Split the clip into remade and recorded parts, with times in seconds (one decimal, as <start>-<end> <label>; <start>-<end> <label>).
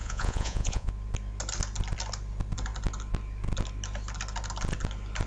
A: 0.0-0.9 remade; 0.9-5.3 recorded